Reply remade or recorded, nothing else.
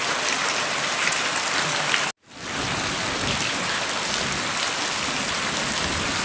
recorded